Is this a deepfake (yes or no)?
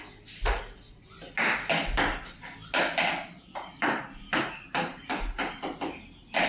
no